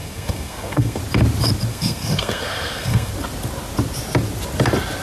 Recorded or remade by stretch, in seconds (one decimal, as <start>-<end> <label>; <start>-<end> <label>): 0.0-1.0 remade; 1.0-1.7 recorded; 1.7-3.1 remade; 3.1-5.0 recorded